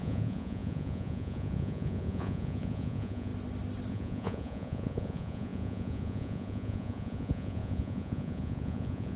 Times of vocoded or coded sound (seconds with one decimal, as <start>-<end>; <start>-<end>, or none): 0.0-3.3; 3.9-9.2